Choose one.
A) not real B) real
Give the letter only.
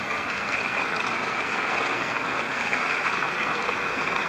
A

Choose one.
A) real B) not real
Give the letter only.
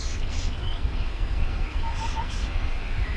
B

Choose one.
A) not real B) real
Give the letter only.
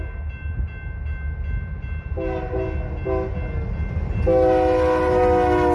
B